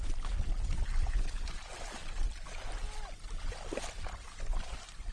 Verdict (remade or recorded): recorded